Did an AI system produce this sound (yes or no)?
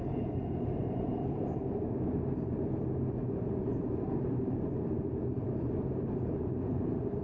yes